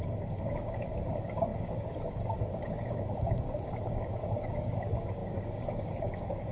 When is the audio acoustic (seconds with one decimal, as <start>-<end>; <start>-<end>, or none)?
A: none